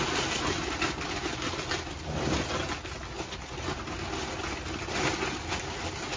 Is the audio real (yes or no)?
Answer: yes